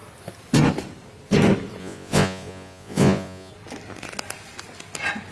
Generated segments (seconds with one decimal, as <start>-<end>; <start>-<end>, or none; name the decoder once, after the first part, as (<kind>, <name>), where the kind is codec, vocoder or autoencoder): 1.8-3.5 (vocoder, Vocos)